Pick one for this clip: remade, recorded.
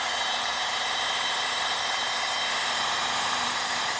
remade